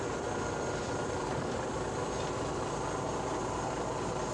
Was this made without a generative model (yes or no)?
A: yes